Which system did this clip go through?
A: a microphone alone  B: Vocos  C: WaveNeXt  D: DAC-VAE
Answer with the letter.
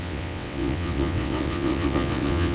C